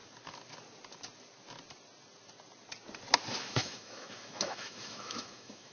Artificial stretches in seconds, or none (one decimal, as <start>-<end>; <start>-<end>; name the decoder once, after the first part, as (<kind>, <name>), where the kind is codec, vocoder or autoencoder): 3.4-5.7 (autoencoder, DAC-VAE)